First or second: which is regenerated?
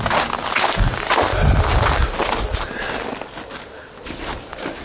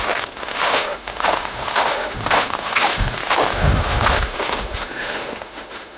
second